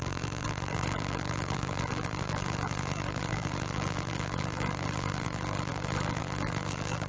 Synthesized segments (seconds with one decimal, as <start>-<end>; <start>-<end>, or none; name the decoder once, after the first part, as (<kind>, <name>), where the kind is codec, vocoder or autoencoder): 0.0-7.1 (vocoder, BigVGAN v2)